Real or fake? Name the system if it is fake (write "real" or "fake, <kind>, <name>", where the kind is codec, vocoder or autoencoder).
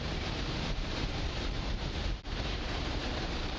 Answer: fake, vocoder, BigVGAN v2